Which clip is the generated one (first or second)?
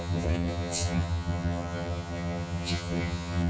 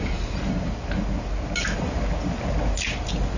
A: first